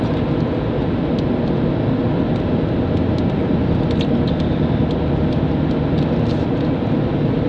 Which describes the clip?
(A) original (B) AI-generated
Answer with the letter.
A